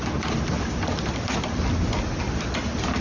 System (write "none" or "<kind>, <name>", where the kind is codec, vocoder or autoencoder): none